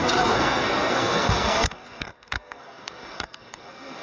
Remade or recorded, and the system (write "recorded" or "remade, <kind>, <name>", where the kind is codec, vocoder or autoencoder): remade, codec, SNAC